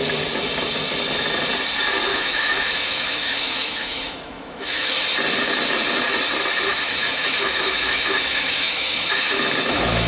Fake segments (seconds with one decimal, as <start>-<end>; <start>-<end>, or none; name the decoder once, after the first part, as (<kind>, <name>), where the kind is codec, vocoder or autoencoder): 2.1-4.9 (autoencoder, DAC-VAE); 6.7-10.1